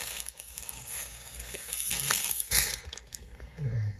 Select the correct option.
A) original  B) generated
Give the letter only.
B